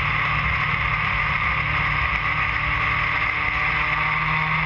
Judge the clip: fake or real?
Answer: real